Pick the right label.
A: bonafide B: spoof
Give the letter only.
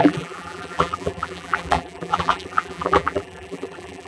B